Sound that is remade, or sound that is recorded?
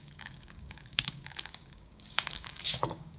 remade